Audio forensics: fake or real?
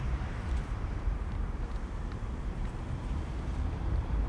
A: fake